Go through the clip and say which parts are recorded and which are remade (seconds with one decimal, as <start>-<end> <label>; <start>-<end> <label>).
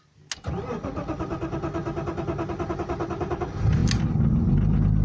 0.0-5.0 recorded